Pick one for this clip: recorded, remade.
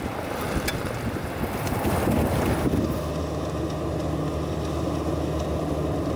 recorded